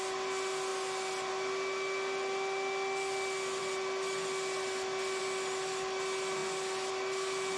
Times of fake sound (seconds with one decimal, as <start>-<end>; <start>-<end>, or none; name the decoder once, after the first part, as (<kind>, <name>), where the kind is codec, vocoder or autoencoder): none